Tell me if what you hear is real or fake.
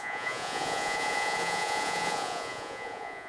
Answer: fake